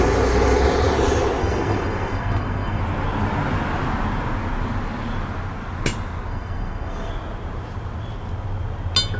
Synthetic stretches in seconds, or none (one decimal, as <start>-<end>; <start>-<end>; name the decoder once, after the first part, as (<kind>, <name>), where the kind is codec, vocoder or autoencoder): 1.4-2.8 (codec, SNAC); 6.3-7.1